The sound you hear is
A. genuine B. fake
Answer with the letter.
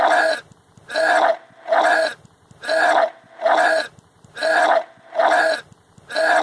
A